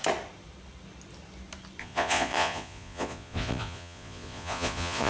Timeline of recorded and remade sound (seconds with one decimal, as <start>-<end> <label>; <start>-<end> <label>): 0.0-1.8 recorded; 1.8-5.1 remade